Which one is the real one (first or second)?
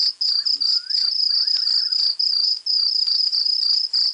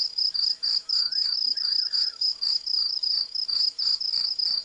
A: first